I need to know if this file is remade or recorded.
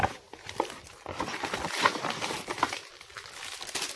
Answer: recorded